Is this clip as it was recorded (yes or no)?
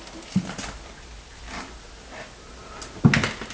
yes